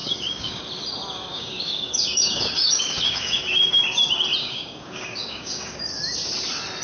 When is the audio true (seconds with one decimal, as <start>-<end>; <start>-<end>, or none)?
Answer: 0.6-1.3; 3.4-4.4; 5.8-6.8